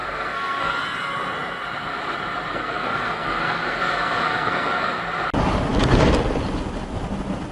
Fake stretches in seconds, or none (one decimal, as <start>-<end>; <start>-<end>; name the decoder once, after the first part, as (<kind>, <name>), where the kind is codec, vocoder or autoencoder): 0.0-0.7 (codec, SNAC); 2.5-5.0